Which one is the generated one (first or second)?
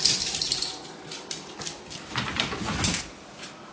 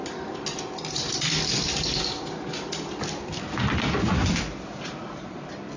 first